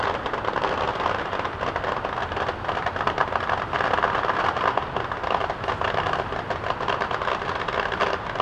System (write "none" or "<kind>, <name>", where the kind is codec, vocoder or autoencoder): none